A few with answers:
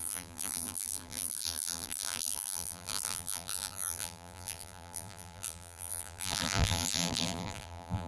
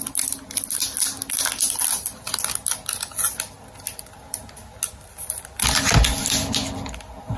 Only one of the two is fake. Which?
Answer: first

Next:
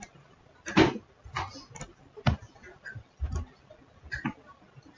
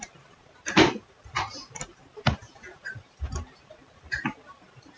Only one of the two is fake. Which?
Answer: second